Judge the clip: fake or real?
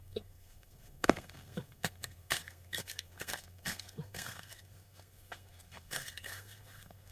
fake